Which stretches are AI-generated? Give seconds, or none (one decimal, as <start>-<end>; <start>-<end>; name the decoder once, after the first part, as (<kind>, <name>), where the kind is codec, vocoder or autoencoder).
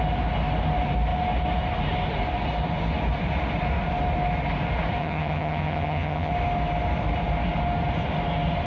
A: 5.0-6.3 (vocoder, HiFi-GAN)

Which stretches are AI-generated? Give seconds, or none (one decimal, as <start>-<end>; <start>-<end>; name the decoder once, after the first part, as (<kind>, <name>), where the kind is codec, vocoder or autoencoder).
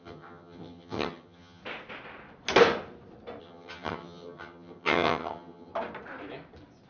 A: 0.0-1.6 (vocoder, HiFi-GAN); 3.4-5.7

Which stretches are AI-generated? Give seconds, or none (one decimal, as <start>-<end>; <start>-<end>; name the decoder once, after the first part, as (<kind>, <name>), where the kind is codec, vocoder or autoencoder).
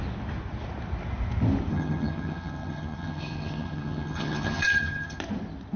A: 1.7-5.2 (vocoder, HiFi-GAN)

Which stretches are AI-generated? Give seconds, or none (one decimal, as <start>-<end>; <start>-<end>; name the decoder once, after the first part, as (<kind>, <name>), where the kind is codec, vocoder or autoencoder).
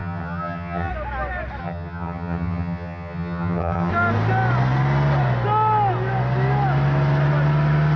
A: 0.0-0.9 (vocoder, HiFi-GAN); 1.6-3.9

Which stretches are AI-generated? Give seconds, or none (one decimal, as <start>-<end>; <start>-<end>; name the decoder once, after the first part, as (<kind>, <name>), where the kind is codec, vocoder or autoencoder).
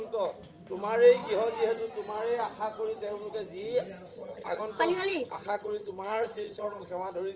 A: 4.1-4.6 (vocoder, HiFi-GAN); 5.1-6.9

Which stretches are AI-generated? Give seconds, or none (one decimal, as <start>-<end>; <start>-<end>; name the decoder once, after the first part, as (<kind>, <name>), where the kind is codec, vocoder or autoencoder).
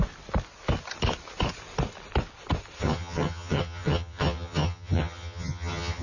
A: 2.8-6.0 (vocoder, HiFi-GAN)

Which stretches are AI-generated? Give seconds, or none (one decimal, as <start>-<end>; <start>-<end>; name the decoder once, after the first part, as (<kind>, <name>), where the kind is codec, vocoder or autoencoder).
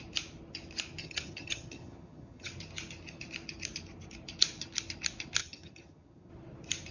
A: 1.0-2.5 (vocoder, HiFi-GAN); 5.4-6.3